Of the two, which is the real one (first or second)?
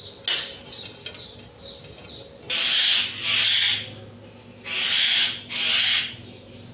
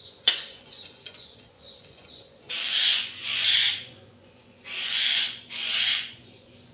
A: first